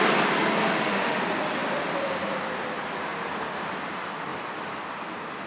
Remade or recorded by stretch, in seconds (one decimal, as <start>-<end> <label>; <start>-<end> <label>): 0.0-0.6 recorded; 0.6-1.2 remade; 1.2-5.5 recorded